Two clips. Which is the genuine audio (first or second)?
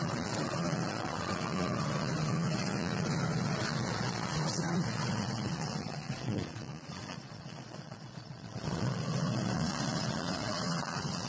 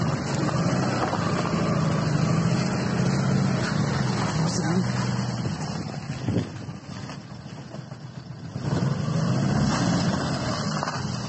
second